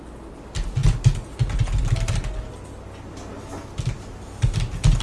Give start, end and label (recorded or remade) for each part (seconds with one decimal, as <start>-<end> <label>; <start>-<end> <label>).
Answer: 0.0-5.0 recorded